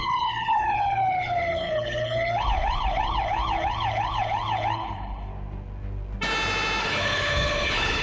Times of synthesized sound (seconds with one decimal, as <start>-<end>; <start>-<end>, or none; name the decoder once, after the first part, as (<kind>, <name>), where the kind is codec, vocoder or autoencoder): 0.0-5.3 (codec, HILCodec); 6.8-8.0